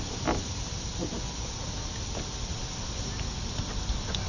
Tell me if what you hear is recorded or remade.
recorded